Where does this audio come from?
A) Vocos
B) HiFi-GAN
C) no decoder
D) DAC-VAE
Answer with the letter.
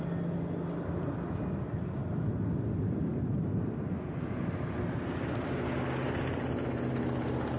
C